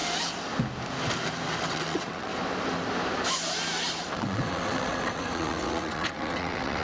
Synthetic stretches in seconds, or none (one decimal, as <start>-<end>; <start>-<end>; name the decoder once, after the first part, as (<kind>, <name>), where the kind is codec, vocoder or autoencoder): 1.6-2.3 (vocoder, WaveNeXt); 4.1-6.8